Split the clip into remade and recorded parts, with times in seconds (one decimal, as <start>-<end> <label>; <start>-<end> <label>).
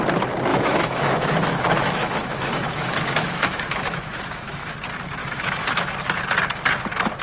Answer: 0.0-0.5 recorded; 0.5-4.7 remade; 4.7-5.2 recorded; 5.2-5.9 remade; 5.9-7.2 recorded